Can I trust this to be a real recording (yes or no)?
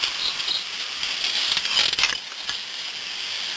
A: yes